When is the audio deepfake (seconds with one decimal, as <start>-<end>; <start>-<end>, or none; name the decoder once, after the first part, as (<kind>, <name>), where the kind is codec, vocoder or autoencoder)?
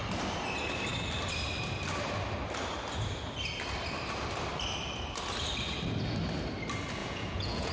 7.0-7.7 (vocoder, Vocos)